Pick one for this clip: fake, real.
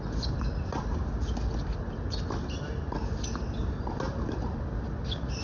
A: real